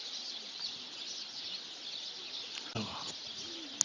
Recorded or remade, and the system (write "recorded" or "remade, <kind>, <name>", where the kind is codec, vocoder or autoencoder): recorded